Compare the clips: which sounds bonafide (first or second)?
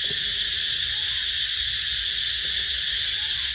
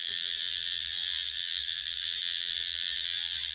first